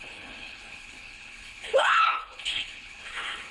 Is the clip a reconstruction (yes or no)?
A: yes